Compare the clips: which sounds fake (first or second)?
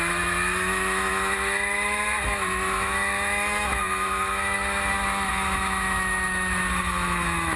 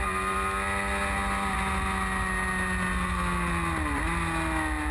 first